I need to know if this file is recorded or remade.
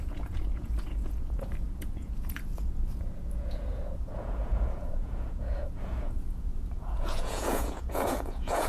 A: remade